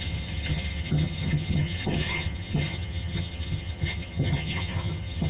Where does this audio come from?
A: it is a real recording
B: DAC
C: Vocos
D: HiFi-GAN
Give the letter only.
D